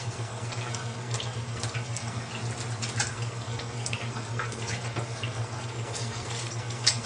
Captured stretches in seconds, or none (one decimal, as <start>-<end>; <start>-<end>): 2.3-3.1